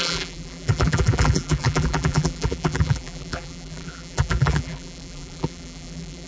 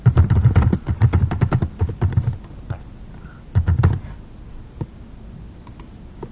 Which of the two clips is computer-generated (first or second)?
first